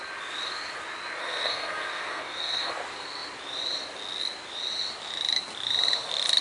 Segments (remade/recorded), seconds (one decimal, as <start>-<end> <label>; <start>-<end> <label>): 0.0-1.2 recorded; 1.2-2.7 remade; 2.7-6.4 recorded